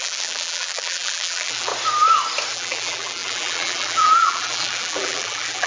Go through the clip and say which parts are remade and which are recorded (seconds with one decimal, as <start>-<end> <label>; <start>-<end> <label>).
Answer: 0.0-1.7 remade; 1.7-2.5 recorded; 2.5-5.7 remade